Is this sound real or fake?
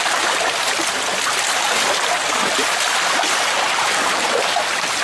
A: real